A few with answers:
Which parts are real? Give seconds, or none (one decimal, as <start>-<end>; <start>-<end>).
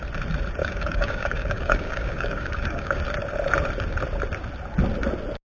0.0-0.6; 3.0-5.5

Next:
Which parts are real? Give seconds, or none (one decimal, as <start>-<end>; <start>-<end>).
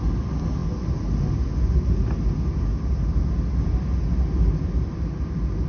0.0-5.7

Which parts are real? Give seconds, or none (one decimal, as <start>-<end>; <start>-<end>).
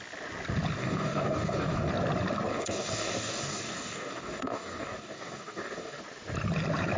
0.0-0.8; 1.9-2.5; 6.0-7.0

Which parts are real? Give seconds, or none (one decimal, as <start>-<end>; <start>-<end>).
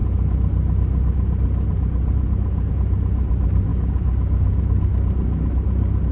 0.0-3.7; 4.6-6.1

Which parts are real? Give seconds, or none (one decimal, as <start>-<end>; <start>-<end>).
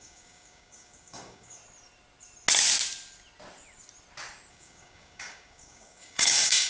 1.6-4.5